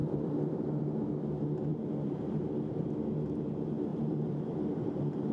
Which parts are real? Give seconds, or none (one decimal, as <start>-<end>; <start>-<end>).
0.6-1.7; 2.9-3.9